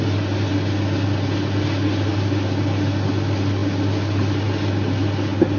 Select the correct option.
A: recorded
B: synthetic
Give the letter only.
A